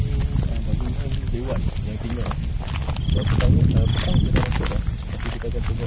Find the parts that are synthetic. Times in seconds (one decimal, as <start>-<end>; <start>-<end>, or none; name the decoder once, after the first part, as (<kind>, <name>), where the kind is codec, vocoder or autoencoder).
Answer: none